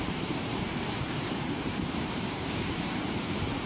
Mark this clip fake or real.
fake